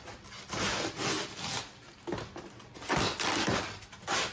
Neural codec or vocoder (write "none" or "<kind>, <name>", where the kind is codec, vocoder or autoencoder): none